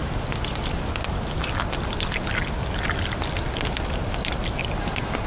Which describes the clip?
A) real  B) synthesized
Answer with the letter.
A